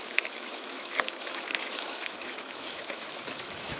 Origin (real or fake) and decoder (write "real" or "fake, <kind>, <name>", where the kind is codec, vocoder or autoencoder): fake, autoencoder, DAC-VAE